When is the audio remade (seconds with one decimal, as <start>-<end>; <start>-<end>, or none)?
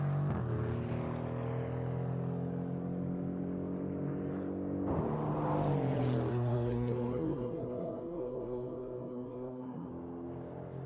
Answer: 6.3-9.9